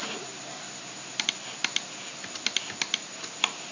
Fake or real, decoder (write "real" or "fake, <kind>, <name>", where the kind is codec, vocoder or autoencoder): real